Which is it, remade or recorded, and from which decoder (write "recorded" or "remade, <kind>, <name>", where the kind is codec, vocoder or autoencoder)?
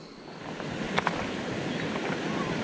recorded